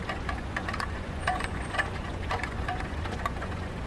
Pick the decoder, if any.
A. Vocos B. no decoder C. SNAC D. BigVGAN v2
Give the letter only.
A